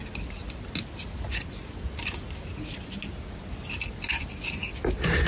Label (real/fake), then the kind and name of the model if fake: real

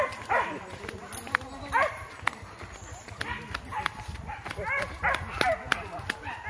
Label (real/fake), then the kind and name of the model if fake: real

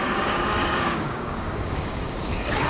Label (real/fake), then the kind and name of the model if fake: fake, codec, DAC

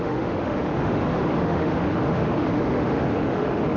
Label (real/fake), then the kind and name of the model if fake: fake, autoencoder, DAC-VAE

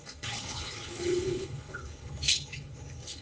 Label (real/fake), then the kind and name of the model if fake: fake, codec, HILCodec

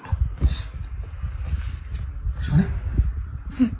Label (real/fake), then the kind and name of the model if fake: real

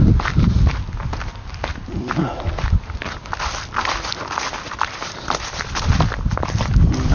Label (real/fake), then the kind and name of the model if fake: real